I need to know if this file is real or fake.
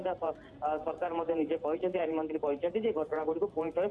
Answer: fake